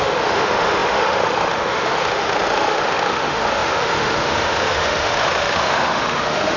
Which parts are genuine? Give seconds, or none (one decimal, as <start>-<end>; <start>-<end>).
none